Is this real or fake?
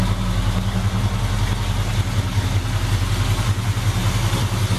real